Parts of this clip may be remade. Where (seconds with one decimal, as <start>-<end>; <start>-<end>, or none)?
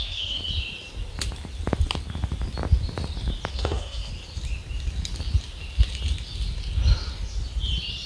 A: 0.0-0.4; 3.5-4.1